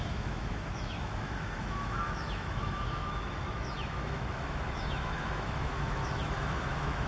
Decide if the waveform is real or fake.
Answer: fake